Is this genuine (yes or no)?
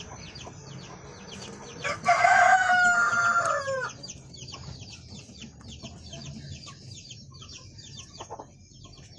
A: yes